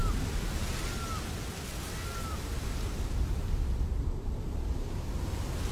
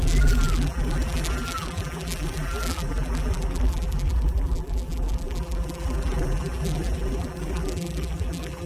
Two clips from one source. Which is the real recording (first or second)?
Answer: first